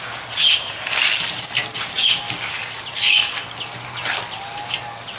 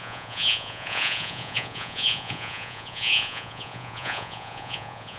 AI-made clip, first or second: second